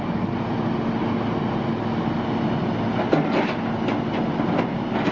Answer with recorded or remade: recorded